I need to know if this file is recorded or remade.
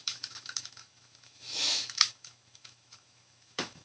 remade